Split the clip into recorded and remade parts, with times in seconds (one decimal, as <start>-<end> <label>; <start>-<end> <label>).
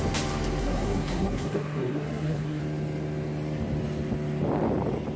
0.0-0.6 recorded; 0.6-2.6 remade; 2.6-5.2 recorded